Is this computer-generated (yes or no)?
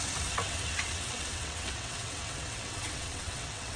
yes